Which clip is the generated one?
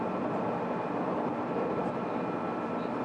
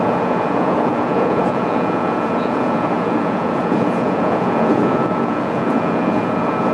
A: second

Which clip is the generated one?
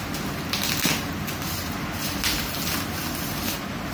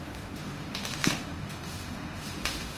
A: second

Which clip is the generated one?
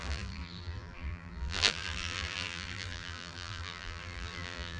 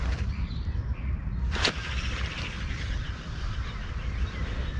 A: first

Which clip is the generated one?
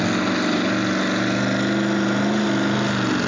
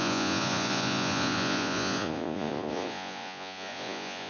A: second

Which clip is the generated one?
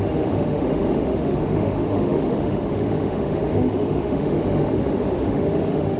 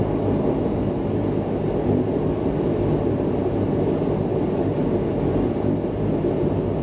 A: first